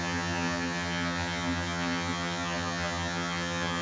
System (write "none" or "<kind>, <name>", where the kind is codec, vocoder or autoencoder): vocoder, HiFi-GAN